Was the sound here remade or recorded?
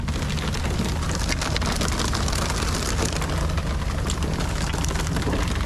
recorded